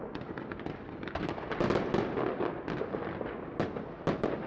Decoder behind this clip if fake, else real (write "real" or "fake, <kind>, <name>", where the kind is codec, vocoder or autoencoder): real